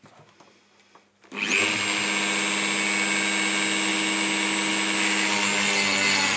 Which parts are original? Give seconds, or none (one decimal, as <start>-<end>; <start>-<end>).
0.0-6.4